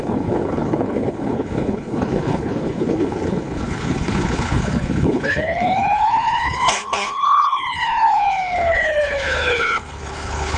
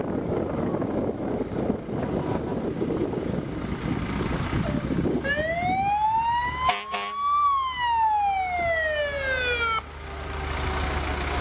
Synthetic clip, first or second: first